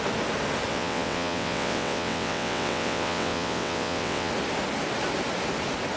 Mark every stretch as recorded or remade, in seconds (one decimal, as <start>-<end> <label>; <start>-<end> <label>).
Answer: 0.0-0.7 recorded; 0.7-4.3 remade; 4.3-6.0 recorded